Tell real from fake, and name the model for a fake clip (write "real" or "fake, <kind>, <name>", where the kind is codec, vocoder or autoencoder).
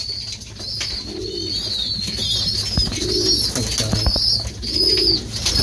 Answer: real